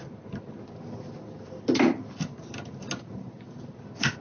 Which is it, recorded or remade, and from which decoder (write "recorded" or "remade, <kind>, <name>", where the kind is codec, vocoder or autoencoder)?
recorded